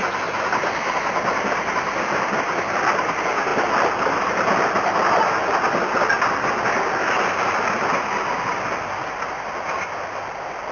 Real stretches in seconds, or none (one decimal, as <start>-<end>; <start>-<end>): 0.0-10.7